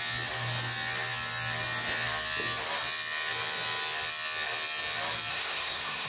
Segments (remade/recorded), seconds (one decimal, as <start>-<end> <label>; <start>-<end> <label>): 0.0-5.3 recorded; 5.3-6.1 remade